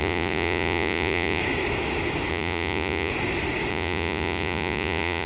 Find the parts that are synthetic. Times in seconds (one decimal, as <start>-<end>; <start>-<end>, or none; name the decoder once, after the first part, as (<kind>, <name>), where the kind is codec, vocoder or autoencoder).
0.0-1.4 (vocoder, Vocos); 2.3-3.1; 3.7-5.3